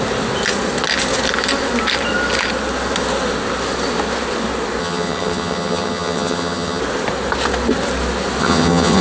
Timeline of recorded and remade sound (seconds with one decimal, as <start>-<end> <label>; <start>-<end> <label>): 0.0-4.8 recorded; 4.8-6.8 remade; 6.8-8.4 recorded; 8.4-9.0 remade